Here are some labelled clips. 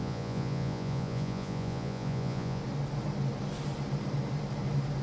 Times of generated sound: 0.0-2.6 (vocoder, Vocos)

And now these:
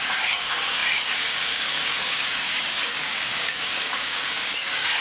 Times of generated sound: 0.0-5.0 (codec, DAC)

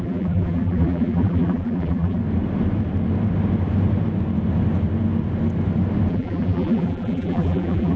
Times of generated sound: 0.0-2.2 (vocoder, BigVGAN v2); 6.1-8.0

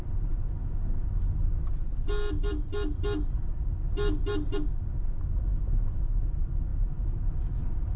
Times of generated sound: none

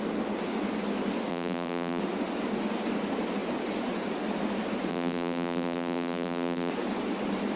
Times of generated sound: 1.3-2.0 (vocoder, BigVGAN v2); 4.9-6.7